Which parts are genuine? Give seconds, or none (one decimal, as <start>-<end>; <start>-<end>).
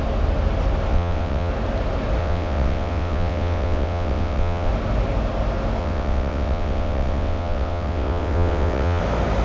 0.0-0.9; 1.5-2.2; 4.7-5.8; 9.0-9.4